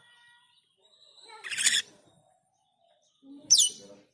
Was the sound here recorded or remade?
recorded